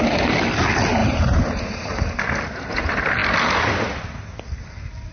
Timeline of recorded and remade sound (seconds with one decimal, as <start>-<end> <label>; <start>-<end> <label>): 0.0-1.0 recorded; 1.0-2.2 remade; 2.2-5.1 recorded